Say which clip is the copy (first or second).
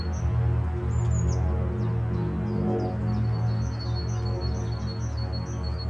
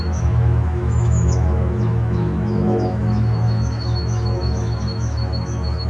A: second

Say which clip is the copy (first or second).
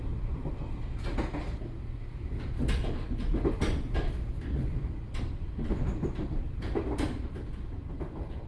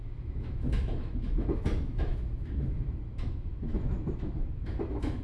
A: second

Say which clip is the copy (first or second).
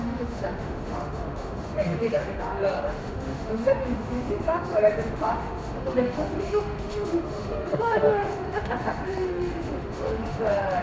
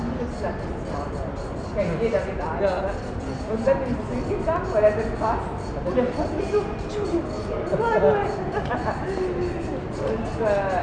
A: first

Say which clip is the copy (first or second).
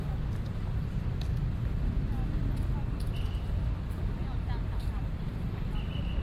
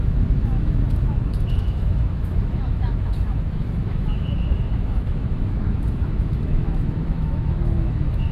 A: second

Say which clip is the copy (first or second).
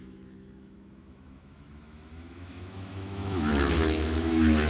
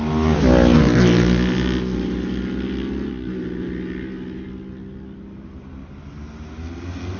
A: first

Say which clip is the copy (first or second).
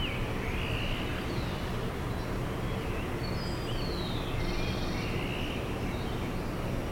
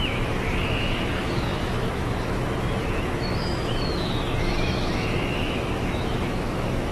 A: second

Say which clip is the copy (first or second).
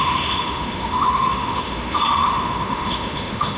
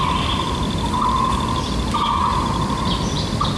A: first